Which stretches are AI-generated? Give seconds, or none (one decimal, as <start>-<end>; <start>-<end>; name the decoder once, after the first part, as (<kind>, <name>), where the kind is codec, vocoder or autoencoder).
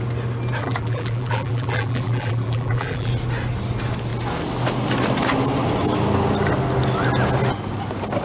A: 0.6-3.1 (vocoder, BigVGAN v2)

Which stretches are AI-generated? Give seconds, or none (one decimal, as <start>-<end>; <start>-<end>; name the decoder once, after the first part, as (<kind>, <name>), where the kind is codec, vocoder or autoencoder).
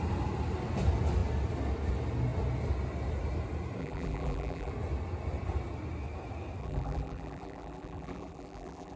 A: 3.8-4.7 (vocoder, BigVGAN v2); 6.6-9.0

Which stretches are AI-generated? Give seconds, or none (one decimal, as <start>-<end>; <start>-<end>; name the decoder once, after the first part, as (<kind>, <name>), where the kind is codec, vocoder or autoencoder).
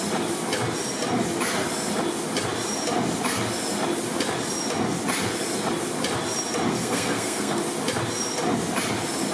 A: 6.7-7.6 (codec, SNAC)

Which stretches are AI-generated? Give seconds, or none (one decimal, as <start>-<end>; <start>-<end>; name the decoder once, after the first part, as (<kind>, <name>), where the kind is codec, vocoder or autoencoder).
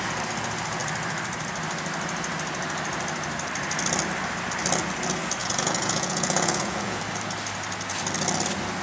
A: 5.4-7.0 (vocoder, Vocos)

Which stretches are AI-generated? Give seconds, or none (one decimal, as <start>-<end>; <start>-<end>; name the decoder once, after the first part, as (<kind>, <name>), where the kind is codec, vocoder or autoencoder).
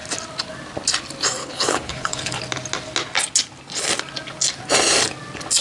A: 1.4-2.4 (codec, HILCodec)